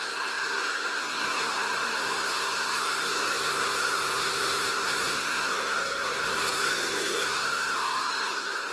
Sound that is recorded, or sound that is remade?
remade